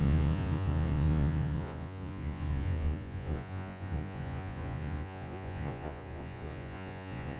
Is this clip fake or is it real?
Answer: fake